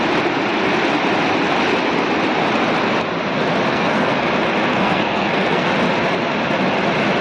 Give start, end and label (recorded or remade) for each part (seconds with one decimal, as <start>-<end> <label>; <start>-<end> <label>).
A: 0.0-3.7 recorded; 3.7-4.3 remade; 4.3-4.7 recorded; 4.7-5.7 remade; 5.7-7.2 recorded